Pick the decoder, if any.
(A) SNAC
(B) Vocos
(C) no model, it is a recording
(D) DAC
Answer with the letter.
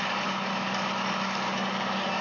D